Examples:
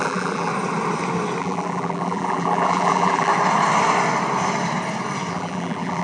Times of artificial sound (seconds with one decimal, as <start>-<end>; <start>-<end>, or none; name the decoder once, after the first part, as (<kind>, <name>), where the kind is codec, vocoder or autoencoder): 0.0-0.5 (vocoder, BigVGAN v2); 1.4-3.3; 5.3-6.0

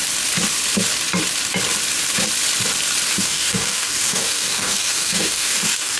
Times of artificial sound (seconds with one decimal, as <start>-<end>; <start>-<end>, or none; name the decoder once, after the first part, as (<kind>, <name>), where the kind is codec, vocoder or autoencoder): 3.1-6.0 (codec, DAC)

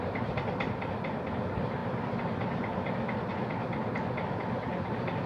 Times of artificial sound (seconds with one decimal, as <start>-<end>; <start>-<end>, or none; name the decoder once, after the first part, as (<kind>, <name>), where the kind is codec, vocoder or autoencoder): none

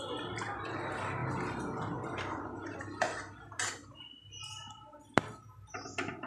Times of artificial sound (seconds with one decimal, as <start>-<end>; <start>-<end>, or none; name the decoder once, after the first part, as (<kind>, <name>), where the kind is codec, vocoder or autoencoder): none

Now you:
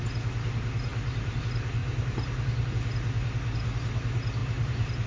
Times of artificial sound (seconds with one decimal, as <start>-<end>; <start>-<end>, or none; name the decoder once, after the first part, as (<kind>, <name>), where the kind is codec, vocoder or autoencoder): 0.9-1.4 (vocoder, BigVGAN v2); 1.8-2.7; 4.4-5.1

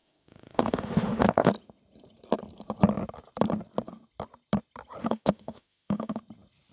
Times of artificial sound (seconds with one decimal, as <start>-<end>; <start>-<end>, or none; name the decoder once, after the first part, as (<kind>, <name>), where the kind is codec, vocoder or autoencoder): 0.0-1.5 (autoencoder, DAC-VAE); 5.0-6.2

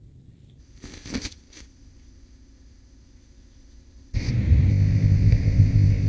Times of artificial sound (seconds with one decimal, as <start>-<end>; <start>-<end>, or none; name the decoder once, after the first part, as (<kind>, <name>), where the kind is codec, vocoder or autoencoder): 0.6-4.3 (codec, ZipCodec); 4.7-6.1